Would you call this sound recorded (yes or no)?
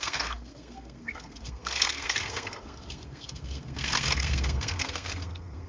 no